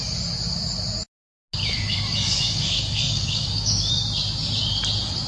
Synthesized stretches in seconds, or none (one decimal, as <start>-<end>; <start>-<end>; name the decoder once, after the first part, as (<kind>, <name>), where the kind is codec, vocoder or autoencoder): 1.6-3.9 (codec, DAC)